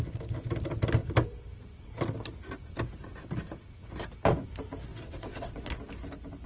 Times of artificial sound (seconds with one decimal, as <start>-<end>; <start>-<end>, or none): 4.9-5.7